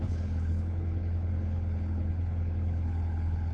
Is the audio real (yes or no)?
no